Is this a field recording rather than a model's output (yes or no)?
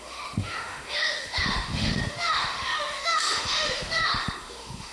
no